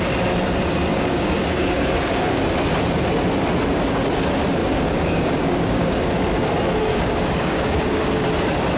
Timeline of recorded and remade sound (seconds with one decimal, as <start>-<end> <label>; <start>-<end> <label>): 0.0-0.9 recorded; 0.9-2.4 remade; 2.4-4.6 recorded; 4.6-6.0 remade; 6.0-6.9 recorded; 6.9-8.3 remade; 8.3-8.8 recorded